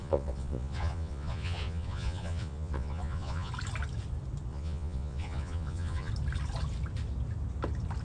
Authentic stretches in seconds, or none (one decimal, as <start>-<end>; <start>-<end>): 3.5-4.5; 6.1-8.0